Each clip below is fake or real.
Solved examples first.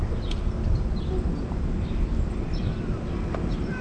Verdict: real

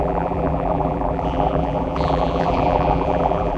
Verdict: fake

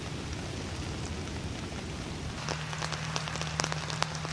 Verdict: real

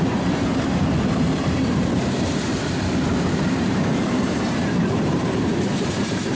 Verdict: fake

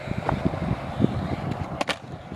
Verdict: real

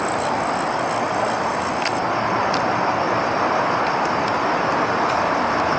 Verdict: real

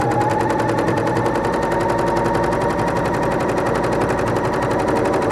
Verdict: fake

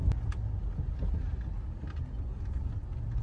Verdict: real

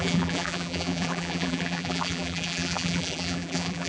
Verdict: fake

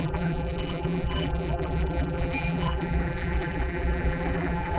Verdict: fake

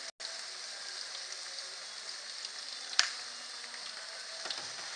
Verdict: real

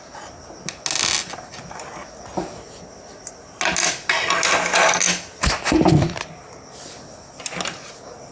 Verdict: real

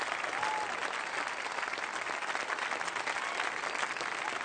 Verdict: real